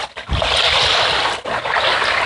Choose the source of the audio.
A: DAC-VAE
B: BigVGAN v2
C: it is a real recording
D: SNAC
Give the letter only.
C